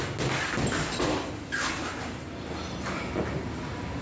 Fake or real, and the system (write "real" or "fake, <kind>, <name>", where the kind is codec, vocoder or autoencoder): real